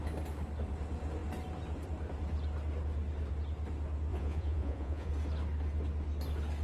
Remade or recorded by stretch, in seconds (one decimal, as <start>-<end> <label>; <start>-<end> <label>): 0.0-4.1 recorded; 4.1-5.1 remade; 5.1-6.6 recorded